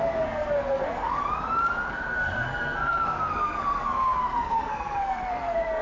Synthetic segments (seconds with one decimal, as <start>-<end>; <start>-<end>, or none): 0.0-1.2; 1.9-5.8